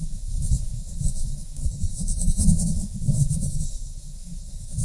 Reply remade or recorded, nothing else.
remade